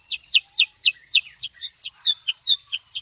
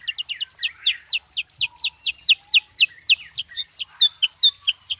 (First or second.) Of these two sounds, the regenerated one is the first